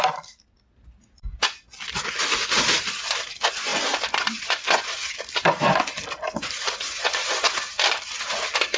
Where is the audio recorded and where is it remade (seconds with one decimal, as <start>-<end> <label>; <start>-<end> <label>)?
0.0-8.8 recorded